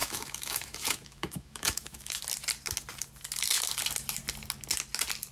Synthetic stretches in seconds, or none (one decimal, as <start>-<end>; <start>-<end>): 0.0-2.2